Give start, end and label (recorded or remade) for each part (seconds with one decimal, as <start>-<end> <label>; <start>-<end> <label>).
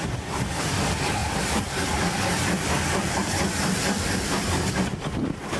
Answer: 0.0-1.2 recorded; 1.2-4.5 remade; 4.5-5.6 recorded